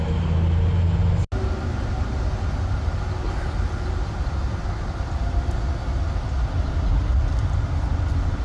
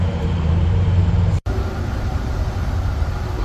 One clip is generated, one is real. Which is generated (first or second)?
second